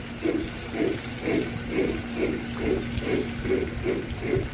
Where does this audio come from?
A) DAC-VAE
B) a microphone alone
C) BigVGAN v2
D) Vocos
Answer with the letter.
B